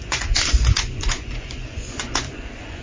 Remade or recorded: remade